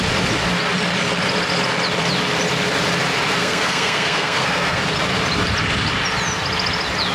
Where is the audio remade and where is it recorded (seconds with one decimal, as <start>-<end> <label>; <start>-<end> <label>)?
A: 0.0-3.4 recorded; 3.4-4.8 remade; 4.8-7.1 recorded

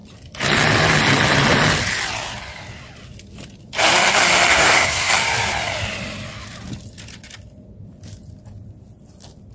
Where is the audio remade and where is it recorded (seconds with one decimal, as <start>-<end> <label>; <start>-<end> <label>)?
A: 0.0-4.5 recorded; 4.5-5.1 remade; 5.1-9.5 recorded

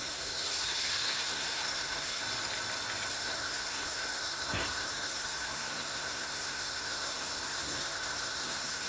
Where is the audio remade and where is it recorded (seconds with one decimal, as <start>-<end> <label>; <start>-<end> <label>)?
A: 0.0-2.2 remade; 2.2-3.1 recorded; 3.1-8.9 remade

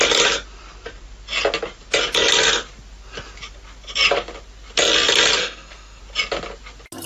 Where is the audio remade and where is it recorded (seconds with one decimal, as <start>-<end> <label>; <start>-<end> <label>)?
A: 0.0-5.4 recorded; 5.4-6.0 remade; 6.0-7.1 recorded